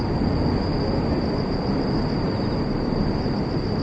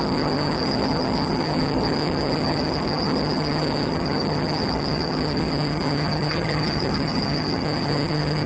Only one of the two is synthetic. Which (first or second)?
second